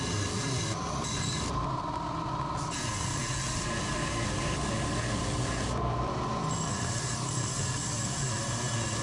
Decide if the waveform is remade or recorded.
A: recorded